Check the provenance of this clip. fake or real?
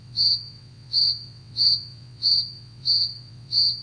fake